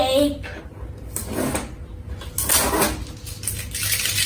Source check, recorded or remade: recorded